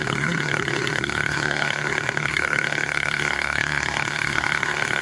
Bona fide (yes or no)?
no